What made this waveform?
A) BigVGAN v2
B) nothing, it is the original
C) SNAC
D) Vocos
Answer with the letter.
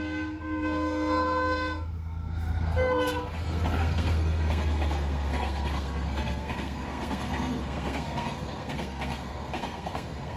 C